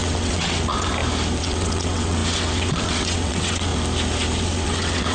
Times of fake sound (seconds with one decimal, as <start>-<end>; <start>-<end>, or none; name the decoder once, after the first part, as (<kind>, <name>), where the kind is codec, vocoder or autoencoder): 0.0-0.9 (vocoder, WaveNeXt); 1.4-3.7; 4.4-5.1